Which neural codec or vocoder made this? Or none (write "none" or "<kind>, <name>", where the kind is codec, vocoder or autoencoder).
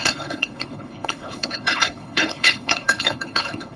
codec, HILCodec